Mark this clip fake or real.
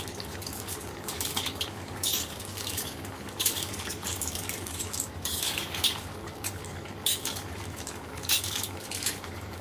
fake